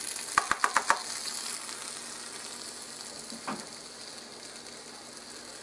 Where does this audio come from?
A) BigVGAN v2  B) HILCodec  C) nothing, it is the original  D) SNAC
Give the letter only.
C